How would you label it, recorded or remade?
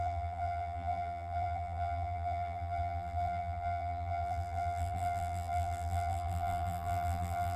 remade